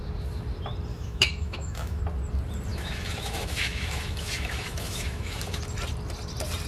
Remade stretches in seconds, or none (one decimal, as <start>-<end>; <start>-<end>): 0.9-2.0; 2.7-5.6